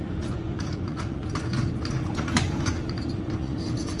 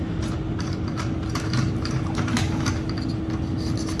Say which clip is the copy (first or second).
first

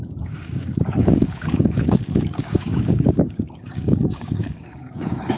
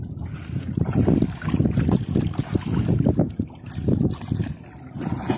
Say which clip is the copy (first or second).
first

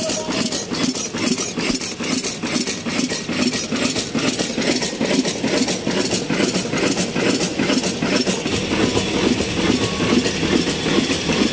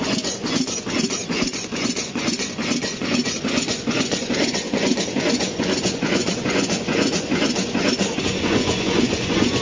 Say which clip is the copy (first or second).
second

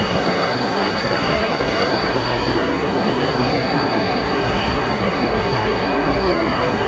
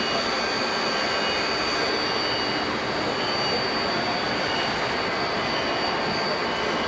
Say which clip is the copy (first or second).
first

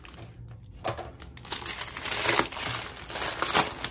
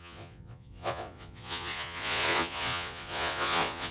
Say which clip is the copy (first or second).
second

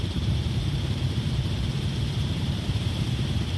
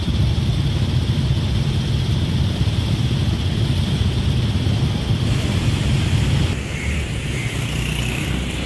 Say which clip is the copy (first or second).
first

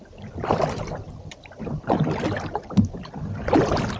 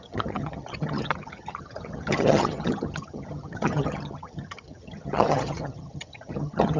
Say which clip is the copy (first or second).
second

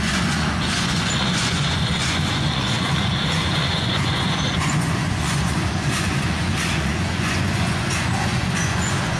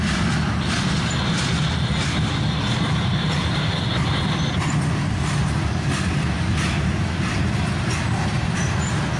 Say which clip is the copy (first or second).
first